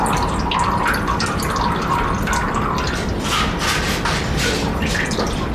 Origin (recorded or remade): recorded